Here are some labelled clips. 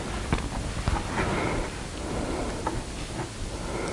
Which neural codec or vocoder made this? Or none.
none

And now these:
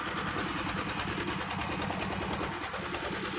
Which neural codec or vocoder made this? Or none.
none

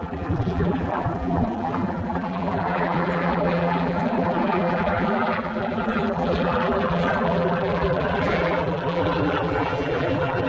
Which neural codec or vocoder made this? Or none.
vocoder, BigVGAN v2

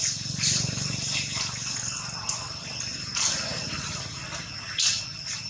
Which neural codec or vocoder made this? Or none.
none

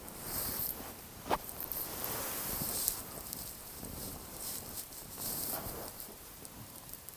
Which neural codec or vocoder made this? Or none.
vocoder, BigVGAN v2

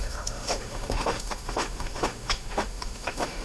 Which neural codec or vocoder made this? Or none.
autoencoder, DAC-VAE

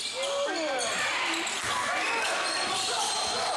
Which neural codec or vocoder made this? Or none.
none